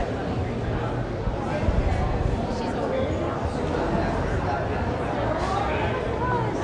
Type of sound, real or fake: real